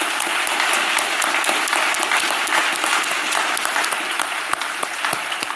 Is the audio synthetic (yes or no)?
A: no